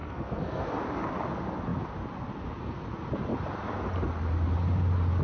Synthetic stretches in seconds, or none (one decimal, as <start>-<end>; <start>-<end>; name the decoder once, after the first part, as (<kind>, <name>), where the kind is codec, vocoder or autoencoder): 0.0-0.7 (codec, SNAC)